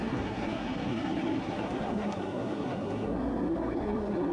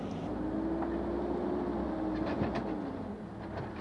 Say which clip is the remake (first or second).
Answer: first